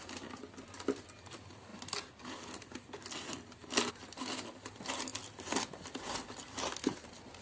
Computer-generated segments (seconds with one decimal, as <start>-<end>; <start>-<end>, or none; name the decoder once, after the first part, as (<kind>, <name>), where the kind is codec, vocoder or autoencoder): none

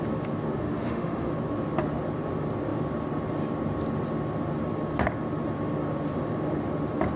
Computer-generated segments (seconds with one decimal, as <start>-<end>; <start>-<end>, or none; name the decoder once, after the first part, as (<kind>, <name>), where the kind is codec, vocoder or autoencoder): 0.6-1.3 (autoencoder, DAC-VAE)

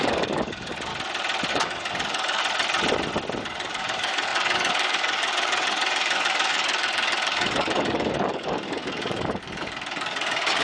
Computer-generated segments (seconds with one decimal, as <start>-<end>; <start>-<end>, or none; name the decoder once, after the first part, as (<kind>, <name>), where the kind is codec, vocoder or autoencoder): 0.0-0.9 (codec, DAC); 1.5-2.4; 3.4-10.6

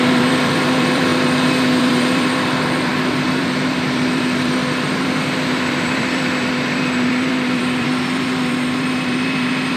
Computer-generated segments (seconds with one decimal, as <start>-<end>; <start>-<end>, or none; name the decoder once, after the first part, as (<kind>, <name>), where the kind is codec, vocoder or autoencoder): 0.0-9.8 (vocoder, BigVGAN v2)

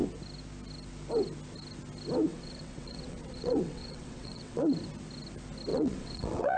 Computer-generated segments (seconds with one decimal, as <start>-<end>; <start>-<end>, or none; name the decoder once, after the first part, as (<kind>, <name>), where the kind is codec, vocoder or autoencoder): 2.3-4.8 (vocoder, WaveNeXt); 5.7-6.6

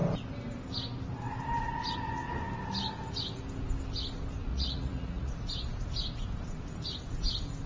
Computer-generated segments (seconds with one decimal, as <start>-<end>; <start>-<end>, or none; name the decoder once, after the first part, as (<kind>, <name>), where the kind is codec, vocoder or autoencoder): 4.5-5.3 (vocoder, Vocos)